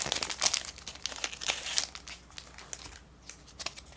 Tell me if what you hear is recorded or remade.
recorded